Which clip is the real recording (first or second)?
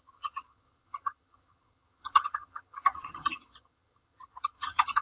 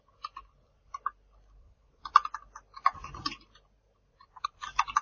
second